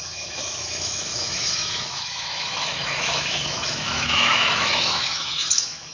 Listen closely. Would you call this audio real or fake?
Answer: fake